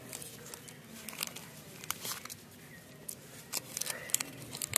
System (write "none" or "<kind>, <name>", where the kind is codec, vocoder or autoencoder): none